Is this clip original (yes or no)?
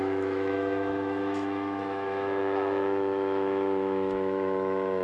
no